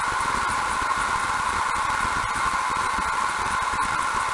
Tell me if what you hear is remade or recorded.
recorded